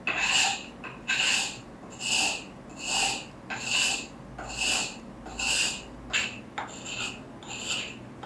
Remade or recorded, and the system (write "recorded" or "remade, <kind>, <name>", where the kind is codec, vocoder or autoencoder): recorded